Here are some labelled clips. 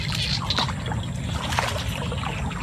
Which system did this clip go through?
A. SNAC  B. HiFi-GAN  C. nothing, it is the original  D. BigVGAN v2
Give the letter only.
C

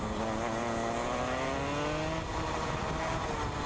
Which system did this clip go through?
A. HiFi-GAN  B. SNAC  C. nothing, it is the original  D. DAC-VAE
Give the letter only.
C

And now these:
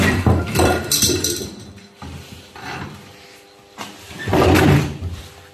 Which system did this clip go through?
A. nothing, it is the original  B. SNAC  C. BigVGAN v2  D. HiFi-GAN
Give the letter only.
C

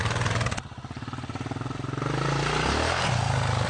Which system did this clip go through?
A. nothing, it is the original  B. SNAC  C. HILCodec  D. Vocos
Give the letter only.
A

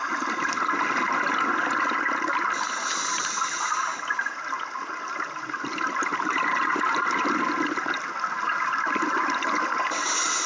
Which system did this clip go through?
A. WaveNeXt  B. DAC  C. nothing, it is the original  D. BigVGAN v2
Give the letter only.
C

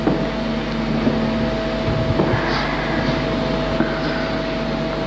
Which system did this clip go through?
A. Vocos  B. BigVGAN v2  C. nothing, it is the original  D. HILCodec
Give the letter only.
C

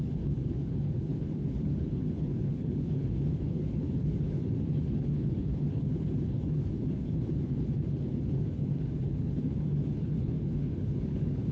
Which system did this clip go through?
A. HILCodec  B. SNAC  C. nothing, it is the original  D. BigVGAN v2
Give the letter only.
A